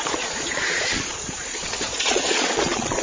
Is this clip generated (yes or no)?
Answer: yes